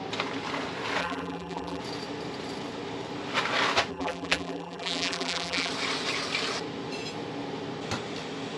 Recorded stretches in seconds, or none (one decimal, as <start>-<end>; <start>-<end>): 0.0-1.0; 1.8-3.9; 5.7-8.6